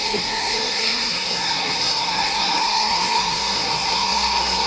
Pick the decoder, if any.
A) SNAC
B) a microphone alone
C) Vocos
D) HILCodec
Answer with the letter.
A